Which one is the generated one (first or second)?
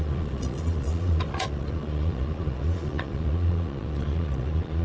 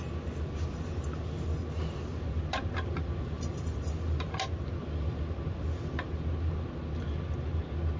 first